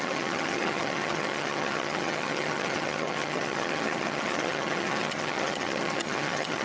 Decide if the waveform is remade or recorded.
remade